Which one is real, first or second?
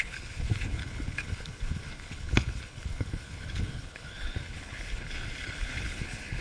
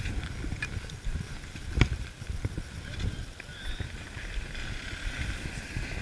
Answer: second